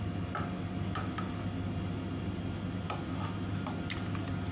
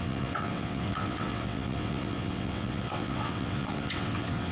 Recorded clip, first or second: first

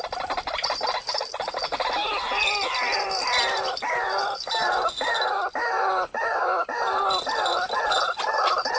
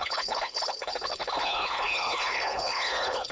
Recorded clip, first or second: first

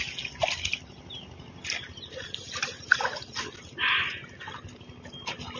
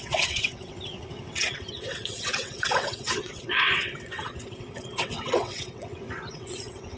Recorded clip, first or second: first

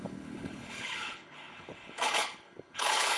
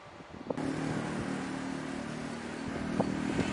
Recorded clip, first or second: second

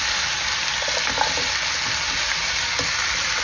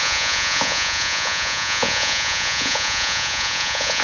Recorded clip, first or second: first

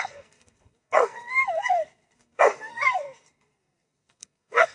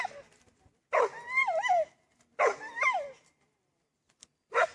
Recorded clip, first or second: second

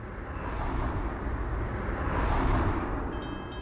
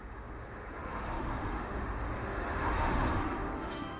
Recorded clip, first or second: first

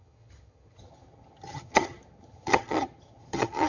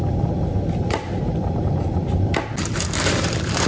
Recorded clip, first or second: second